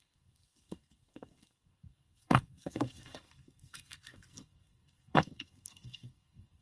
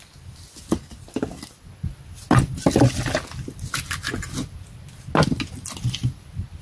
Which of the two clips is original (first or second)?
second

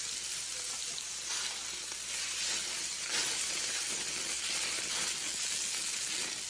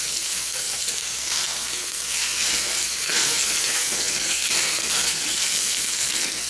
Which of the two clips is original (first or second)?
first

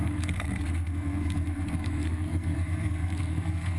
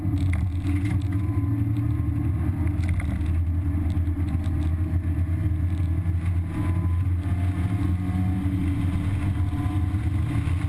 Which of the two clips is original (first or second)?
second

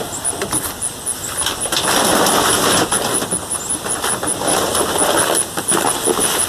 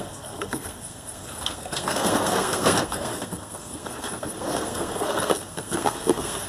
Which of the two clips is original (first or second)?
first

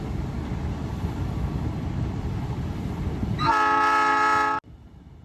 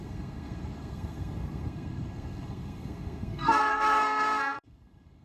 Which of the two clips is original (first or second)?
first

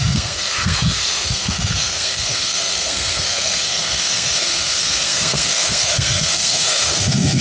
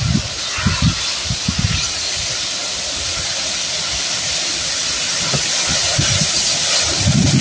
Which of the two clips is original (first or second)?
second